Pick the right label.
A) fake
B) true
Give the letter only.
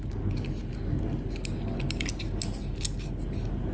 B